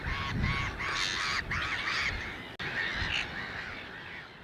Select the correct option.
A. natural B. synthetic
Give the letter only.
A